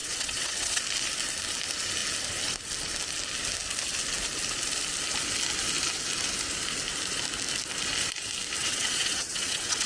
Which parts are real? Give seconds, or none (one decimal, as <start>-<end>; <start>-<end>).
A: 0.8-8.6